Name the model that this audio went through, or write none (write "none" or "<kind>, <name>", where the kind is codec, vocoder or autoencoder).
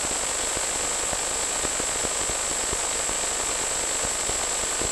none